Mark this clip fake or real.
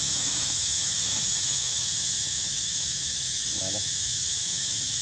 fake